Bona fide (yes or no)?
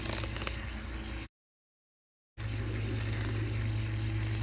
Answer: yes